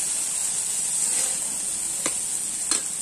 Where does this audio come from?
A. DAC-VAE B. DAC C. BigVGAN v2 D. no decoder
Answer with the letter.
D